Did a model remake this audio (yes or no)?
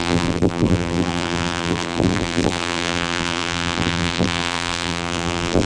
yes